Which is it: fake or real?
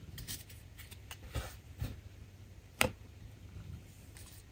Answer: fake